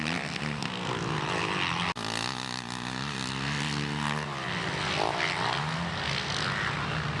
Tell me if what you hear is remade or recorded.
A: recorded